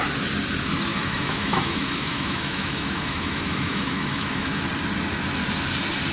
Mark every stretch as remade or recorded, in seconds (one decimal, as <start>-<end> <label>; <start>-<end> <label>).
0.0-0.9 recorded; 0.9-4.6 remade; 4.6-6.1 recorded